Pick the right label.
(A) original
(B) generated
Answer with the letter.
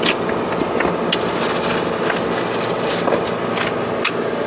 A